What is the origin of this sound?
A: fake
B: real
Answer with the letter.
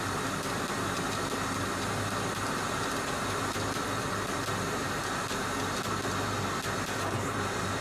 B